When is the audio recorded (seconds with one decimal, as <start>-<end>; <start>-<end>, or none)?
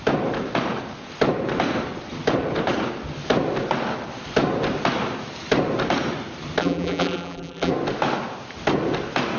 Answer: 0.0-6.6; 7.7-9.4